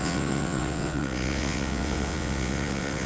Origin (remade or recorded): remade